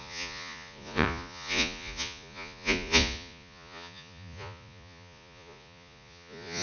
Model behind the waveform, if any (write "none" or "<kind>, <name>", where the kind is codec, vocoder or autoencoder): vocoder, Vocos